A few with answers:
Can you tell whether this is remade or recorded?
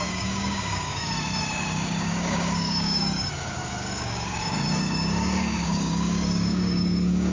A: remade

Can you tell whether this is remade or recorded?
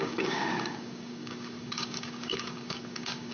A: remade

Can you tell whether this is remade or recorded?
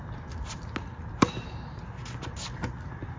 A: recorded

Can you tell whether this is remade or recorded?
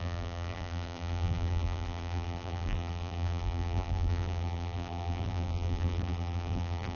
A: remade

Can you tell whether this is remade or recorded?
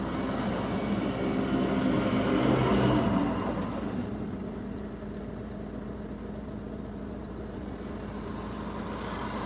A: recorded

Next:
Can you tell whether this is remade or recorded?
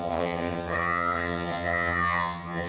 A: remade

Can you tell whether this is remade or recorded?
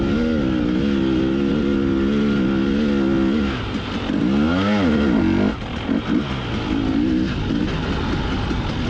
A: recorded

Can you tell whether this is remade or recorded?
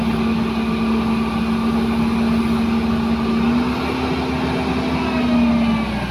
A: recorded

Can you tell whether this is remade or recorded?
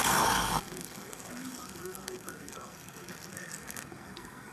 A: remade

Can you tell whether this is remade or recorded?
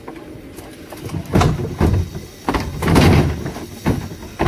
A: recorded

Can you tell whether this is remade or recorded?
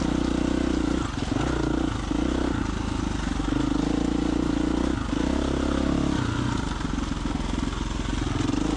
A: recorded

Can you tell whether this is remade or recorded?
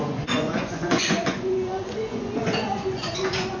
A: remade